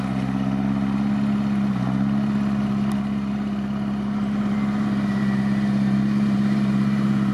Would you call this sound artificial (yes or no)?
yes